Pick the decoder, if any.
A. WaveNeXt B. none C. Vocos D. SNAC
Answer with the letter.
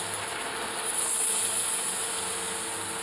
B